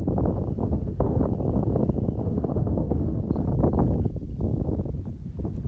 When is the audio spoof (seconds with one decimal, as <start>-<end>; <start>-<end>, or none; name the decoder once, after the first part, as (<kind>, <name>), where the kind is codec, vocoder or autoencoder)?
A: 0.6-1.2 (autoencoder, DAC-VAE); 2.2-3.2